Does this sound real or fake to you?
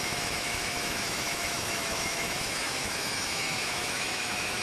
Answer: fake